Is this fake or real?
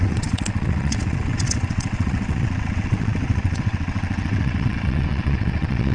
fake